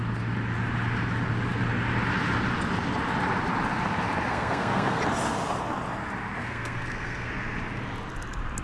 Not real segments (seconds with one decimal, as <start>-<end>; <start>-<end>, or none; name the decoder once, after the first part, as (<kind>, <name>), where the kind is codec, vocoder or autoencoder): 4.3-5.0 (codec, SNAC); 6.4-7.3